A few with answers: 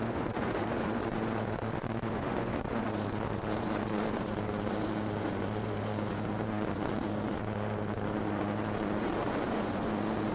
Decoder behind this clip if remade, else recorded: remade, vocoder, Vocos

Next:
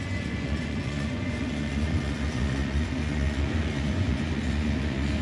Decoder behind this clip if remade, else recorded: remade, vocoder, Vocos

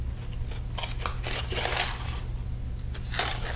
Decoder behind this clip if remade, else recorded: recorded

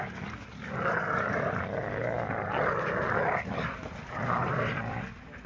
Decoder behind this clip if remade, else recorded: recorded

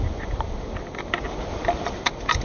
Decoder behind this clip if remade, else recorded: recorded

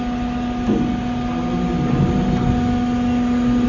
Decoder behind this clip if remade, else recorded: recorded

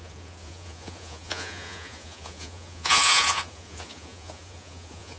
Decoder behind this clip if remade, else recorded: remade, vocoder, Vocos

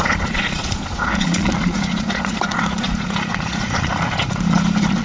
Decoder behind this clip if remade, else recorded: remade, vocoder, Vocos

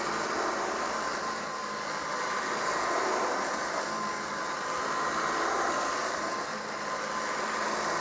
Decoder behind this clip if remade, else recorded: recorded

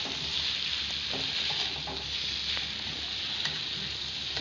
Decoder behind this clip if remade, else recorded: recorded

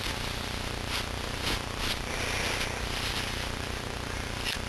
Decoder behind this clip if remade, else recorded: recorded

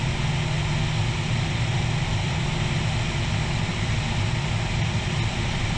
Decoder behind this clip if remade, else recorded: recorded